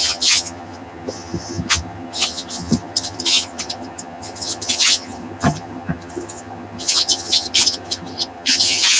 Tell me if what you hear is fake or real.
fake